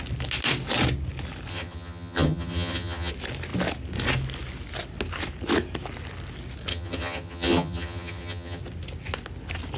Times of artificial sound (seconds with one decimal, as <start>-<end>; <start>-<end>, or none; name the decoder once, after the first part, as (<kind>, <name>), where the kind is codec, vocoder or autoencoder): 1.5-3.1 (vocoder, HiFi-GAN); 6.7-8.6